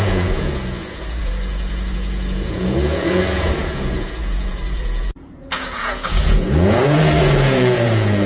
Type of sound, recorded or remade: remade